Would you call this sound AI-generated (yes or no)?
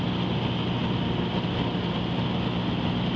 no